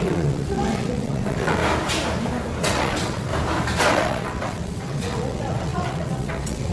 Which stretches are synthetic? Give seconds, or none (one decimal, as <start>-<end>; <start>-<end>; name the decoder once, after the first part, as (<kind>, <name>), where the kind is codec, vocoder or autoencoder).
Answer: 0.0-1.6 (vocoder, WaveNeXt); 2.6-3.3; 3.8-6.7